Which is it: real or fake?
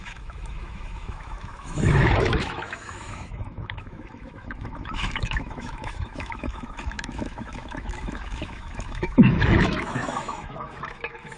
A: fake